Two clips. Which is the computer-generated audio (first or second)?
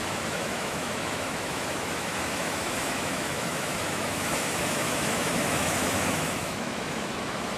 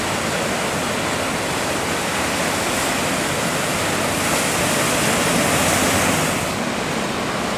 first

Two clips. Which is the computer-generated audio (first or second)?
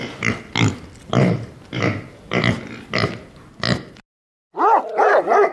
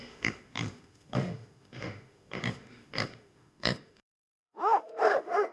second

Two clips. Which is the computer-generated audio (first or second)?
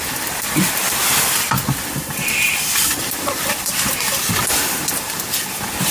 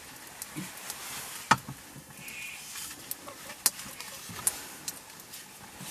first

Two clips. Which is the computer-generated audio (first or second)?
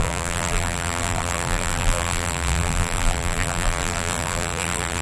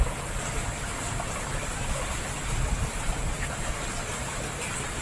first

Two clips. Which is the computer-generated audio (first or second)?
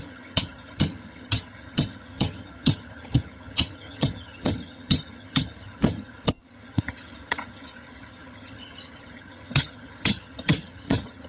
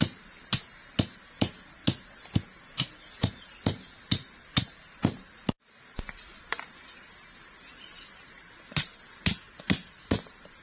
first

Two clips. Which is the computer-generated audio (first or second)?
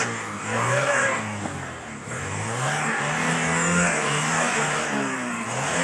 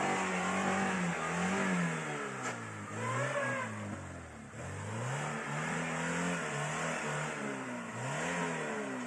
first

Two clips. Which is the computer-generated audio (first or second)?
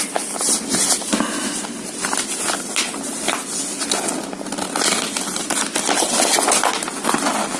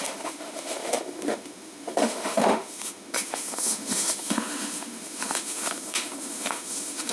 second